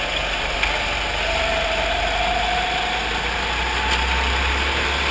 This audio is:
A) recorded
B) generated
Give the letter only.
A